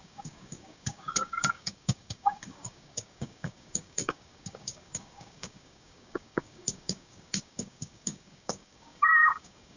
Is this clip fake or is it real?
fake